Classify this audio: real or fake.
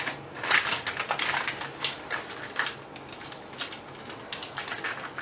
real